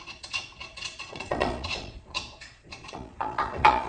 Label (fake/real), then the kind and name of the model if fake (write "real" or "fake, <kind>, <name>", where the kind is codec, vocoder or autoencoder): fake, vocoder, Vocos